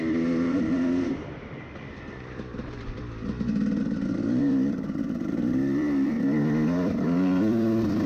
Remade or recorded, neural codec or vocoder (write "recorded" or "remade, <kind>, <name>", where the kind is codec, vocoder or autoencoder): remade, vocoder, BigVGAN v2